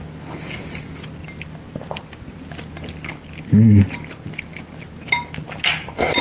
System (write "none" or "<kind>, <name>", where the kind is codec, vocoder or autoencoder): none